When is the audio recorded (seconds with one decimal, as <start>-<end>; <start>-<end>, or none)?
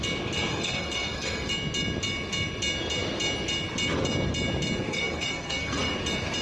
0.0-0.5; 1.5-4.9; 5.9-6.4